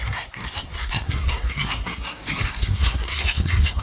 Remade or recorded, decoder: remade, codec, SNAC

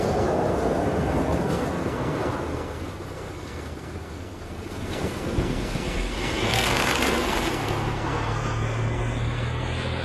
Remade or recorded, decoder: remade, codec, SNAC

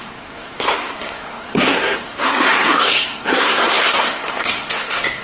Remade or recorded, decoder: remade, codec, SNAC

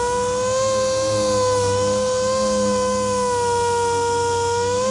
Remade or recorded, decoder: recorded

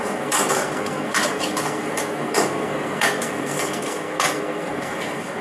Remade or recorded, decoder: remade, codec, SNAC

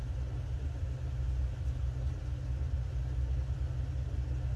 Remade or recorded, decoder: recorded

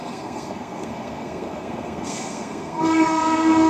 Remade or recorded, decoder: remade, codec, SNAC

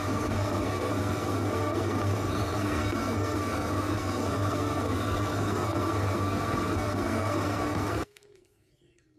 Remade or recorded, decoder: remade, codec, SNAC